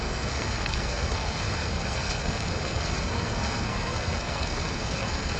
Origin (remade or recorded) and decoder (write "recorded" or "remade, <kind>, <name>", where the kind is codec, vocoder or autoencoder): remade, codec, SNAC